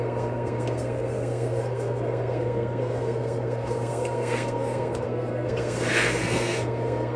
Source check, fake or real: fake